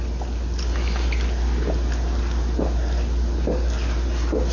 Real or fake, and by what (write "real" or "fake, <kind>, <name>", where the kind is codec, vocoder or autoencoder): real